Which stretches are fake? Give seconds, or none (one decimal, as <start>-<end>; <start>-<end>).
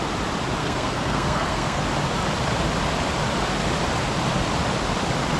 0.6-1.8